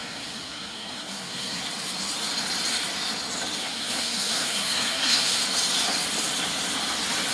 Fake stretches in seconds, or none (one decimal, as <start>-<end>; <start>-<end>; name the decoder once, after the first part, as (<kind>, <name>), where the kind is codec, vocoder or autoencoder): 0.0-1.6 (codec, SNAC); 3.6-5.4